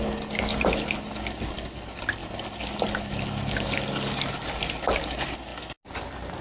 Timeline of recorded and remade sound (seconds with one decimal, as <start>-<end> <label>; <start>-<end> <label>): 0.0-6.4 recorded